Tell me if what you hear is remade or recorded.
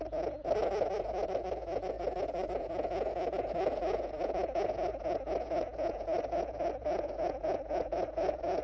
remade